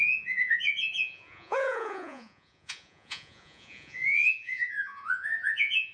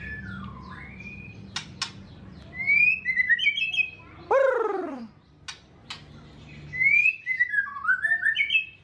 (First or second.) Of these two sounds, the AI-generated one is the first